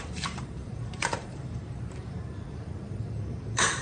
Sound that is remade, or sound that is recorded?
remade